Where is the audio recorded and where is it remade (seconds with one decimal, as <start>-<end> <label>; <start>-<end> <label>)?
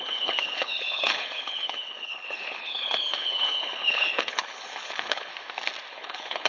0.0-5.3 remade; 5.3-5.9 recorded; 5.9-6.5 remade